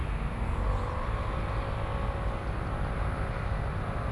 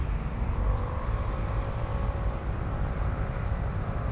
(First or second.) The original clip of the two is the first